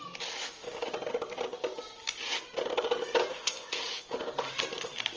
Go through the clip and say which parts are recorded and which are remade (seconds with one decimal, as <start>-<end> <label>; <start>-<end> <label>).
0.0-3.3 recorded; 3.3-3.8 remade; 3.8-5.2 recorded